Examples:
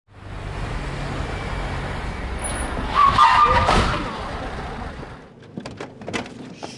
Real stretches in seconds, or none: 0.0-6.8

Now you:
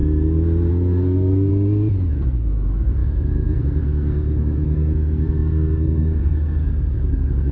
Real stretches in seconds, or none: 0.0-0.7; 1.5-2.1

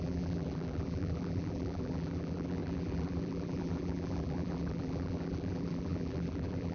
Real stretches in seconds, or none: none